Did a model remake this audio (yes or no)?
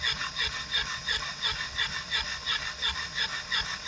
no